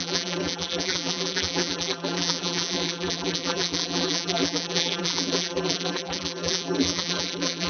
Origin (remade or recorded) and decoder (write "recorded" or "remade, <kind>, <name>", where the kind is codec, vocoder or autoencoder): remade, vocoder, BigVGAN v2